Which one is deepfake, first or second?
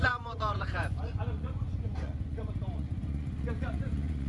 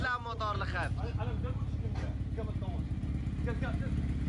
first